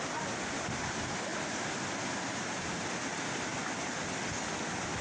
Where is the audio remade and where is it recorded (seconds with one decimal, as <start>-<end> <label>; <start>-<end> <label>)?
0.0-5.0 recorded